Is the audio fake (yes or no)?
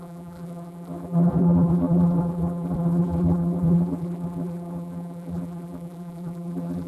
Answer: yes